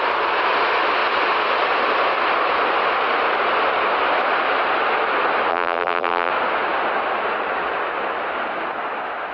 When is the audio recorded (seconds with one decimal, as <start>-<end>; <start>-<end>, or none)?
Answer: 0.0-5.5; 6.3-9.3